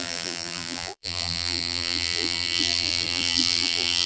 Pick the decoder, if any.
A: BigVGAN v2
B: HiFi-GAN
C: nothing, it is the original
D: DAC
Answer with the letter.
A